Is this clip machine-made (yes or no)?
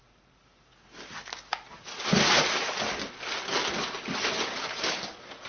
no